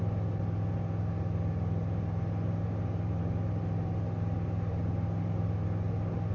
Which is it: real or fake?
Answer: real